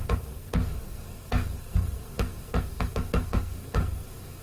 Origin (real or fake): fake